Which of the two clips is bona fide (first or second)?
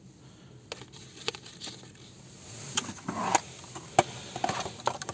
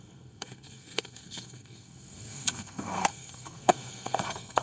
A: first